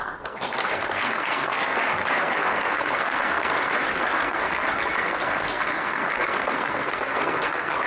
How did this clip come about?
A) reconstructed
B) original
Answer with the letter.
A